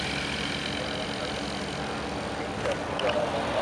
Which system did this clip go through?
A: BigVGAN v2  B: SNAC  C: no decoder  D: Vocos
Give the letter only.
C